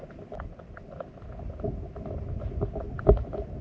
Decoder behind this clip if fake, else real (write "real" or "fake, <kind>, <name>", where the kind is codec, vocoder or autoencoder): real